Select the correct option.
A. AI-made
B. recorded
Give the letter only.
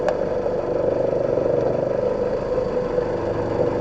B